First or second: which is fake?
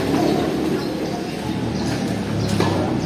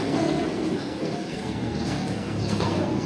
second